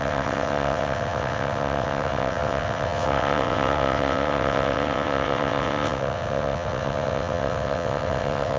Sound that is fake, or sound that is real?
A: fake